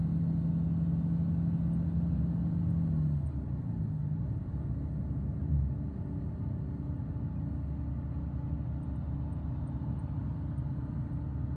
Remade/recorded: recorded